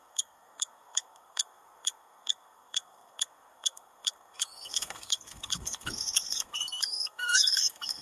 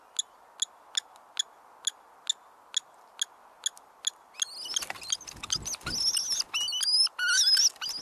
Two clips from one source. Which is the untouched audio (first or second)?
second